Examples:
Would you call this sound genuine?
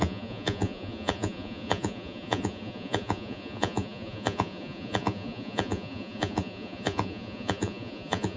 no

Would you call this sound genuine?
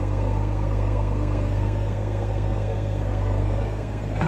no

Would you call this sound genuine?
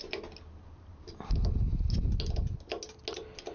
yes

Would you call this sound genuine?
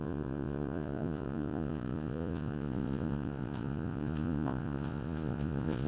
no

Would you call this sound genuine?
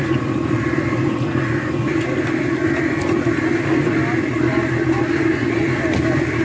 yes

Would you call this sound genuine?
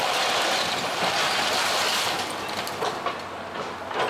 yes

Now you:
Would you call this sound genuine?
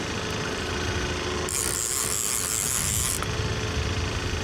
yes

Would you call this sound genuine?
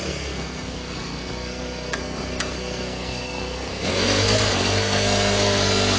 no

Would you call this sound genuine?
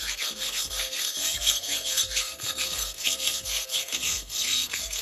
no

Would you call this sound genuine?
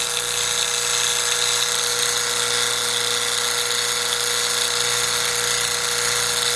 yes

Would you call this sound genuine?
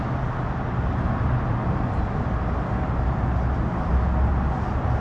yes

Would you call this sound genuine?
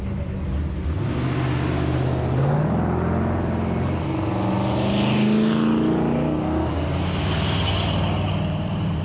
yes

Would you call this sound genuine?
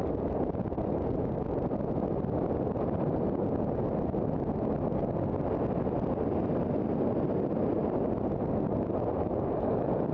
yes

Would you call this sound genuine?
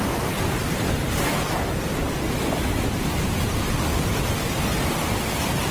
yes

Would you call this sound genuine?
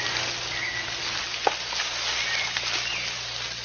yes